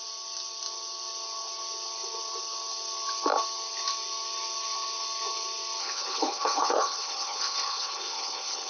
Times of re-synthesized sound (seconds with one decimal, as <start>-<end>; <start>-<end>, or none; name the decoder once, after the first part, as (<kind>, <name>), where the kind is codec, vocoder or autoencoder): 5.8-8.7 (codec, HILCodec)